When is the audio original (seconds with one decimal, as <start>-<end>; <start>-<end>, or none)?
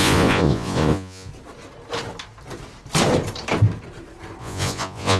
1.3-4.4